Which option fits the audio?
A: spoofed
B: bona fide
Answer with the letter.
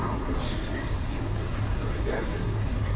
A